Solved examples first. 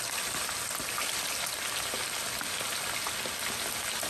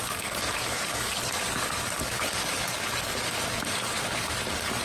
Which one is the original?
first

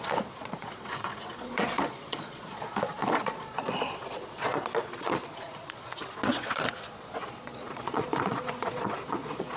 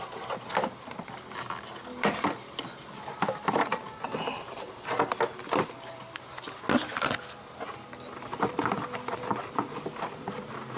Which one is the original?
second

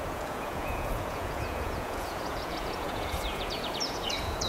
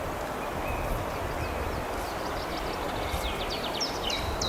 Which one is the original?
second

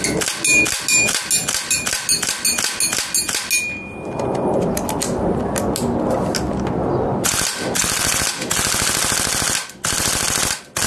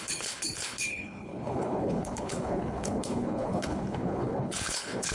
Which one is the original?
first